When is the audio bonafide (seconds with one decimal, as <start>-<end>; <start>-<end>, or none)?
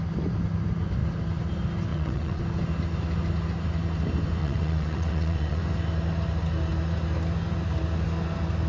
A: 0.0-1.9; 2.4-4.4; 5.6-8.7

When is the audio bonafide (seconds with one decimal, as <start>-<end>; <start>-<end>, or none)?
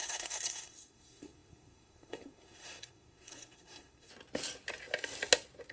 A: 4.1-5.7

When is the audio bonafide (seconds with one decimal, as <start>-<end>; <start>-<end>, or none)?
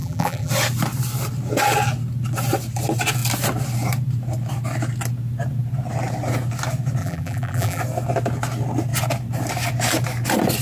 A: 0.5-7.0; 7.8-10.6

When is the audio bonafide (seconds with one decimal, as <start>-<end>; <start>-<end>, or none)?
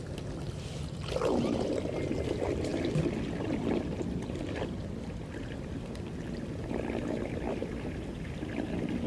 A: 0.0-9.1